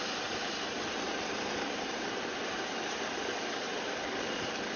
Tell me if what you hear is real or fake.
fake